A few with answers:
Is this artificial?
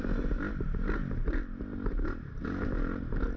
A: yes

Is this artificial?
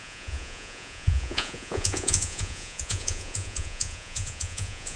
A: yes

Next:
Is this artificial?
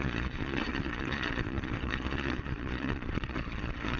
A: yes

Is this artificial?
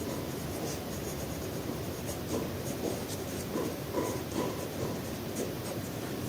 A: yes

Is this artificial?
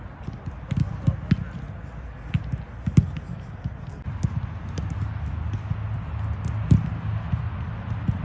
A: no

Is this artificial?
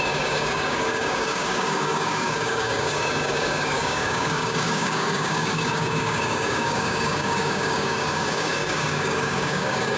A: yes